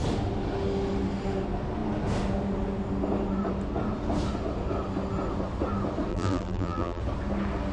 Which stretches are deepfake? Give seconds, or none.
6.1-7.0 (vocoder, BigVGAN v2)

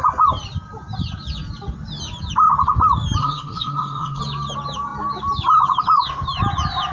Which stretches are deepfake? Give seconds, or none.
3.2-4.2 (codec, SNAC)

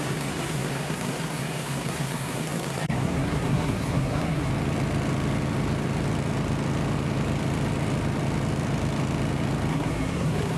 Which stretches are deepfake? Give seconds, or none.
0.0-4.5 (codec, SNAC); 9.7-10.6

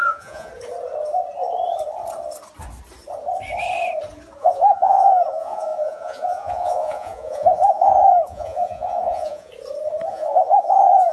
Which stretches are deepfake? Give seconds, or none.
0.0-0.5 (vocoder, Vocos); 4.4-9.5; 10.1-11.1